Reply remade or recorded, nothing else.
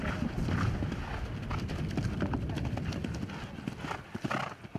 recorded